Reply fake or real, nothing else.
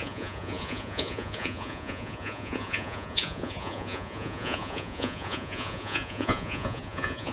fake